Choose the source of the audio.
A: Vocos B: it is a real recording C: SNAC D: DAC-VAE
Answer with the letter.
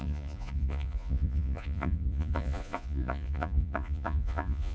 A